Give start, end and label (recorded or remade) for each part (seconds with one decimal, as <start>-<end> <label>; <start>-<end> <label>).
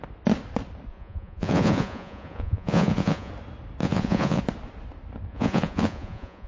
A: 0.0-0.9 recorded; 0.9-3.3 remade; 3.3-3.8 recorded; 3.8-4.4 remade; 4.4-5.3 recorded; 5.3-6.5 remade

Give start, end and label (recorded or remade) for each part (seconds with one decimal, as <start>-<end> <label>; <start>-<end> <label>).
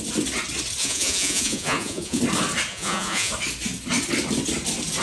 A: 0.0-0.8 recorded; 0.8-2.2 remade; 2.2-2.7 recorded; 2.7-3.3 remade; 3.3-5.0 recorded